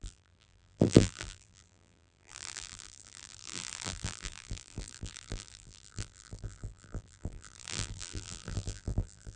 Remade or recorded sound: remade